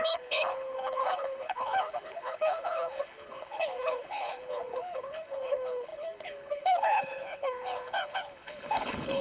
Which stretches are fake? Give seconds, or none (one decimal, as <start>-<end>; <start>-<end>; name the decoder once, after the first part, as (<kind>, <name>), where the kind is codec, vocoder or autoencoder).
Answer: 0.0-9.2 (codec, HILCodec)